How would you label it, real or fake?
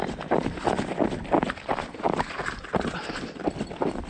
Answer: real